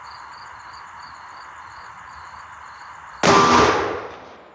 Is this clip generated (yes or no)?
no